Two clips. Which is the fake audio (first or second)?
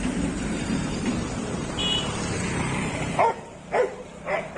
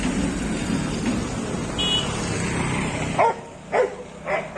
first